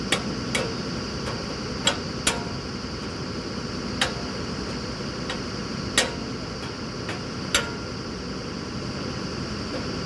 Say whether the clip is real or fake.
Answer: real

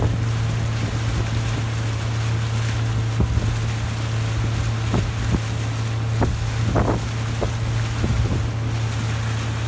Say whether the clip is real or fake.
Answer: real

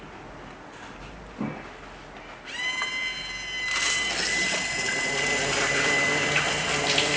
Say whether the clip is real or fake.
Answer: real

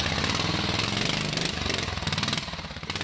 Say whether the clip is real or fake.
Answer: real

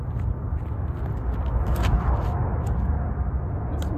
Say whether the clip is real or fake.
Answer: real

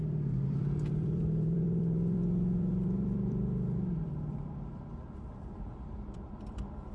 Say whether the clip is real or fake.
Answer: fake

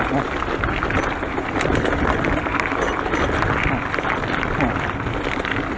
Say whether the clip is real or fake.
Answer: real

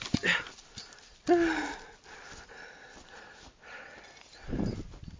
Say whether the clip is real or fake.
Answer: real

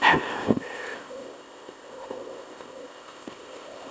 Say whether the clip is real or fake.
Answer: fake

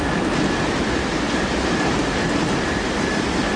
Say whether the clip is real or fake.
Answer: real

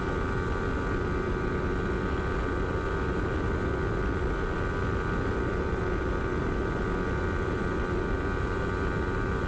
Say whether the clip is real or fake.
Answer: real